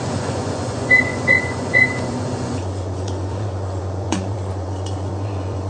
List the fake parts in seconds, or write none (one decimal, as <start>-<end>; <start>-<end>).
0.0-5.7

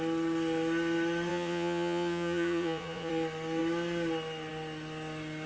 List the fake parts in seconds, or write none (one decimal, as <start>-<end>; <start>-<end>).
1.3-3.1

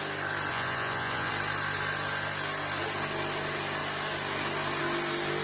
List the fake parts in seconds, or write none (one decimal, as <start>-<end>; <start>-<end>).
0.5-1.3

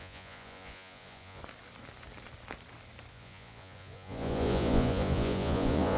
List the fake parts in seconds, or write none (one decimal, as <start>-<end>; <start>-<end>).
0.0-1.4; 3.1-6.0

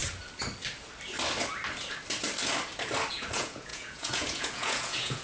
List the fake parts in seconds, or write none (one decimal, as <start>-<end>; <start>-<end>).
3.1-5.2

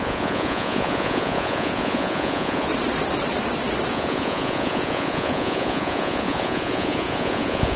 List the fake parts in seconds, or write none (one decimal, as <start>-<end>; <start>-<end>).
0.0-2.7; 3.9-7.8